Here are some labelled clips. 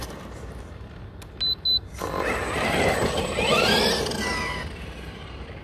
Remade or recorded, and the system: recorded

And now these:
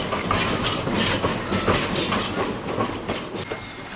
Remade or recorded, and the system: recorded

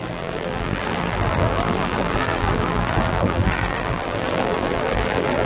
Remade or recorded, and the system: remade, vocoder, BigVGAN v2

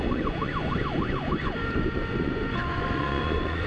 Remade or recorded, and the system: remade, vocoder, Vocos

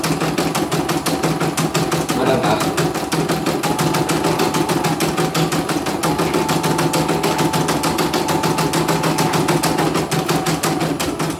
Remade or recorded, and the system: recorded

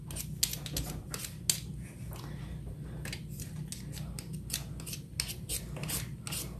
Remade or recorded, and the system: recorded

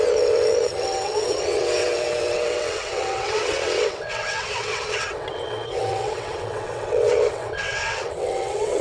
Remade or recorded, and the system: remade, vocoder, WaveNeXt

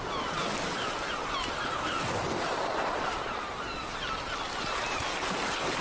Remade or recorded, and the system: recorded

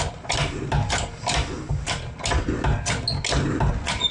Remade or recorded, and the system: recorded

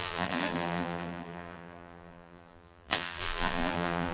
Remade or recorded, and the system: remade, vocoder, BigVGAN v2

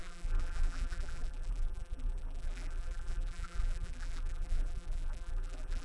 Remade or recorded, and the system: remade, vocoder, BigVGAN v2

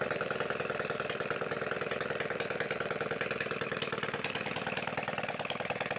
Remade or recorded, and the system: remade, vocoder, BigVGAN v2